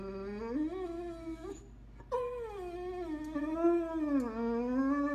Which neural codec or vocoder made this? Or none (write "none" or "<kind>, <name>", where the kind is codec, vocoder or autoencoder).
none